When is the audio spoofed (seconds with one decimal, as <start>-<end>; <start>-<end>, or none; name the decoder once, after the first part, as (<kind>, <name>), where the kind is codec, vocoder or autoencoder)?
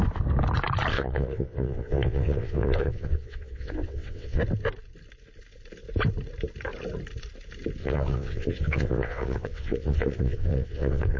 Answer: 0.9-4.4 (vocoder, WaveNeXt); 7.8-11.2